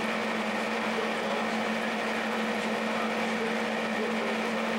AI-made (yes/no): no